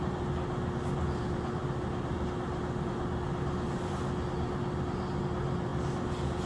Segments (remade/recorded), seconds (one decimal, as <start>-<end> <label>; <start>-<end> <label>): 0.0-6.5 recorded

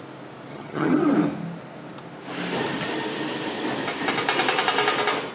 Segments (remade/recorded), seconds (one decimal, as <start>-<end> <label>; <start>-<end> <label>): 0.0-0.5 recorded; 0.5-1.0 remade; 1.0-5.3 recorded

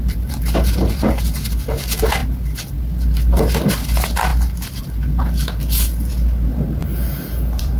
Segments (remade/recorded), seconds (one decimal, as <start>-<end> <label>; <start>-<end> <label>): 0.0-6.8 recorded; 6.8-7.8 remade

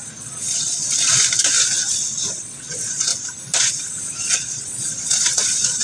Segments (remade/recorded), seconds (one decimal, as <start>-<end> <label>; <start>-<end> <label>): 0.0-0.8 remade; 0.8-2.3 recorded; 2.3-3.1 remade; 3.1-3.7 recorded; 3.7-5.8 remade

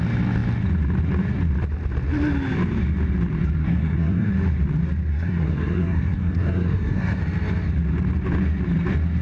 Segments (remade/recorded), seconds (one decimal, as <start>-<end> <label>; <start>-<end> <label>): 0.0-3.6 recorded; 3.6-4.3 remade; 4.3-5.1 recorded; 5.1-7.2 remade; 7.2-9.2 recorded

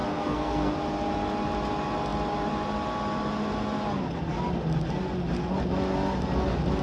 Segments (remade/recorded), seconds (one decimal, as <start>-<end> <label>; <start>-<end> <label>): 0.0-0.7 remade; 0.7-6.8 recorded